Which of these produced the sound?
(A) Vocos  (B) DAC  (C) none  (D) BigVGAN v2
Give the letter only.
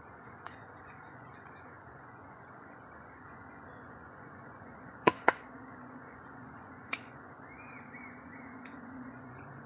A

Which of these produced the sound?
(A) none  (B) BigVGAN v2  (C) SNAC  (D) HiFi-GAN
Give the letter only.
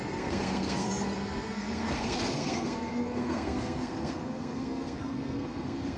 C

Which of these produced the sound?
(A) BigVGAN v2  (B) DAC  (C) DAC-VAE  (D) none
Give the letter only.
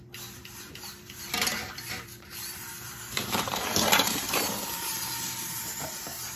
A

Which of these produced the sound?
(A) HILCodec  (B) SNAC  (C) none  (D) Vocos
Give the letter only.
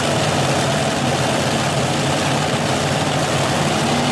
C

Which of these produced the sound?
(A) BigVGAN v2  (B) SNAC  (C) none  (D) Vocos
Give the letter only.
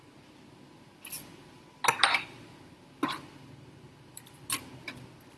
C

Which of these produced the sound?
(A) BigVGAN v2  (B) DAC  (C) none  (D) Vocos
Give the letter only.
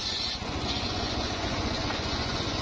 D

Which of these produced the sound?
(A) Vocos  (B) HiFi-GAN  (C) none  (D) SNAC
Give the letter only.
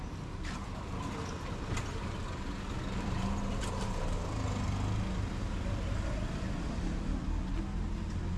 C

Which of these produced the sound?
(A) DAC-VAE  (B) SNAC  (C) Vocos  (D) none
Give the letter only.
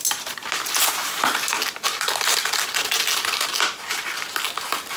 D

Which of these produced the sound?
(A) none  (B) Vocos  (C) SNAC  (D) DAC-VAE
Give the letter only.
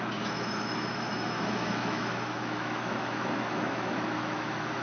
D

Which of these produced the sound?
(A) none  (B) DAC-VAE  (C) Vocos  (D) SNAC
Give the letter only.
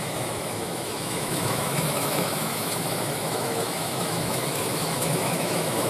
B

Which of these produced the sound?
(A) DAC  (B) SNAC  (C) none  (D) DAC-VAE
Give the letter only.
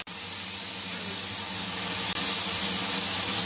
C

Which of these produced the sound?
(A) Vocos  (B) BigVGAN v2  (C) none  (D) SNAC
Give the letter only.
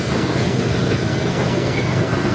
D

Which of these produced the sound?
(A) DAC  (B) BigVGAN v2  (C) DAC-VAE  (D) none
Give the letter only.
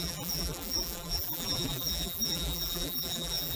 B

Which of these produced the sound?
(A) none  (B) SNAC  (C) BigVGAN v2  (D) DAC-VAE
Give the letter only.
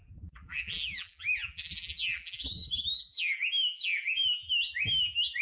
C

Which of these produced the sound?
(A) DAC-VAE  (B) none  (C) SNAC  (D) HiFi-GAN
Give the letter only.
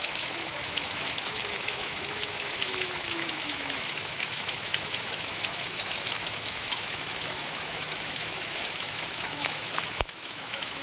A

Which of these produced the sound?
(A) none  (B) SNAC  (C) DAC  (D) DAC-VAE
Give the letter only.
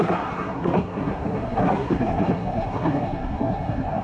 B